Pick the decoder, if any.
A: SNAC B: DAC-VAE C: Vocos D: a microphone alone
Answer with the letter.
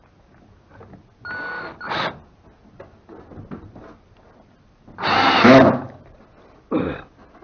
D